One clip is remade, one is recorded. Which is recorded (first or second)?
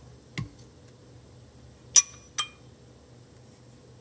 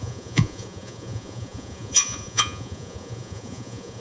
first